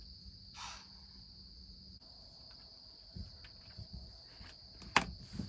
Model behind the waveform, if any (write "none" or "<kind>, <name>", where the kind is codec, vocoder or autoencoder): none